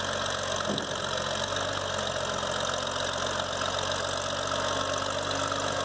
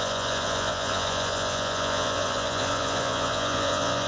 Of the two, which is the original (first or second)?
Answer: first